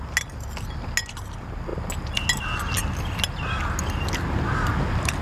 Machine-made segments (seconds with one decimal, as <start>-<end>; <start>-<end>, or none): none